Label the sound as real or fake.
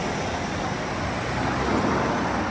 real